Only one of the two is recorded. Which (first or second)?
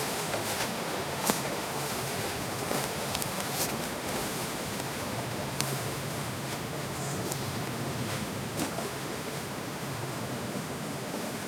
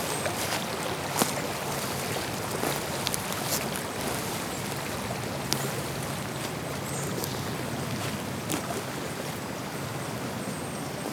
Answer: second